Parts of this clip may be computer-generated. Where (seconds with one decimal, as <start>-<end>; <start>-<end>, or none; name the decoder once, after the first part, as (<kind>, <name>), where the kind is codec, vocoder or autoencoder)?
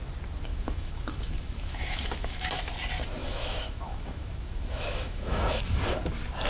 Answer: 0.5-2.6 (autoencoder, DAC-VAE); 3.2-5.6